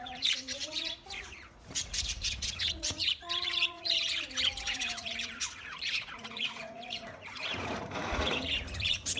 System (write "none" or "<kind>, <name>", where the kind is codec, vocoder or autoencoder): vocoder, Vocos